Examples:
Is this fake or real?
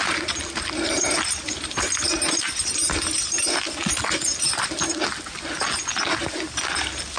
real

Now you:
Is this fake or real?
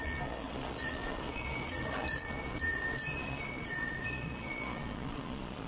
fake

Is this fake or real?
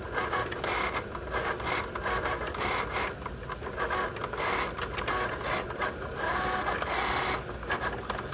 real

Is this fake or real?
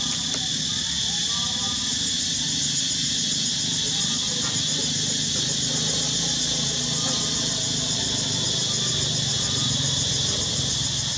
real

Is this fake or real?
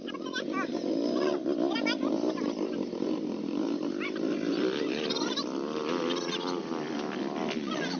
real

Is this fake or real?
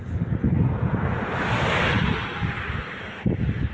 real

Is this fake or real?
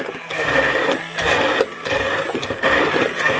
real